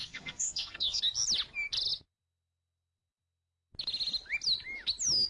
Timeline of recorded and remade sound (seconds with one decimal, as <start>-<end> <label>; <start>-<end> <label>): 0.0-1.0 remade; 1.0-5.3 recorded